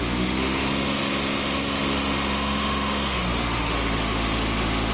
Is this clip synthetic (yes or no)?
yes